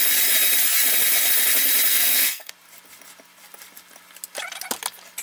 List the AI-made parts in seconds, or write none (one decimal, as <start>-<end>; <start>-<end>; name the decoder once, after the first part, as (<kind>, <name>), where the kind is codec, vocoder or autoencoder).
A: 1.9-2.5 (codec, SNAC)